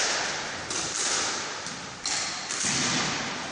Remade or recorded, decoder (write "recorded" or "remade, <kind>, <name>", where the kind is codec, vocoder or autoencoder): recorded